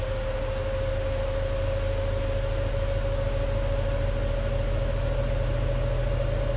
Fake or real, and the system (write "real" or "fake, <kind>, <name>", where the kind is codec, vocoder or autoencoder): real